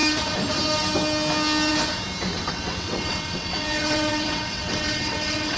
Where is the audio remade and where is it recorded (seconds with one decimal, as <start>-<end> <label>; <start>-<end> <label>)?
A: 0.0-2.3 recorded; 2.3-5.6 remade